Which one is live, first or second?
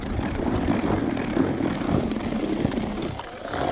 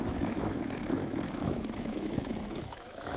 first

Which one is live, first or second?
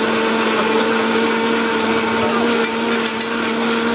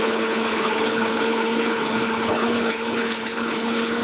first